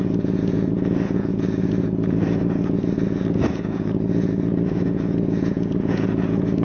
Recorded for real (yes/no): no